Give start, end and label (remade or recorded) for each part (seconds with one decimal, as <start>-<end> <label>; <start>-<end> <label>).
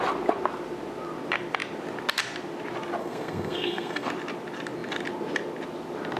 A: 0.0-3.0 recorded; 3.0-4.1 remade; 4.1-6.2 recorded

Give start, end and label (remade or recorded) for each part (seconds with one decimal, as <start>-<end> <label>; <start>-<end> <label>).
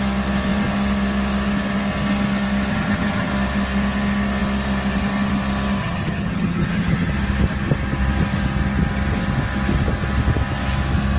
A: 0.0-2.7 recorded; 2.7-3.3 remade; 3.3-5.8 recorded; 5.8-7.1 remade; 7.1-11.2 recorded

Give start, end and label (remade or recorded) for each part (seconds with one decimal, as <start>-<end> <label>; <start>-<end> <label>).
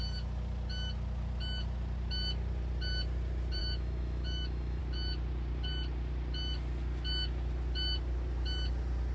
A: 0.0-3.6 recorded; 3.6-4.8 remade; 4.8-9.1 recorded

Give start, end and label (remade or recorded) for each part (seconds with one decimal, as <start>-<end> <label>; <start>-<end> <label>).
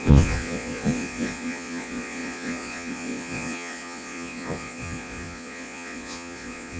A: 0.0-6.8 remade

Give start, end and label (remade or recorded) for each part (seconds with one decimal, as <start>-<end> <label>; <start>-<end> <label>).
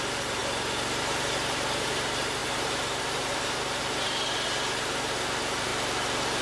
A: 0.0-0.4 remade; 0.4-1.0 recorded; 1.0-5.7 remade; 5.7-6.4 recorded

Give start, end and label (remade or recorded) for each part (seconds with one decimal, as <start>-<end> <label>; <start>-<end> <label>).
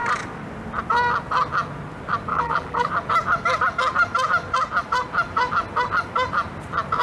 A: 0.0-2.3 recorded; 2.3-2.9 remade; 2.9-7.0 recorded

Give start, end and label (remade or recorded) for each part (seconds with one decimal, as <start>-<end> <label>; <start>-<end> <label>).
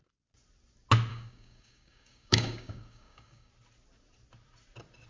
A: 0.0-1.1 recorded; 1.1-3.5 remade; 3.5-5.1 recorded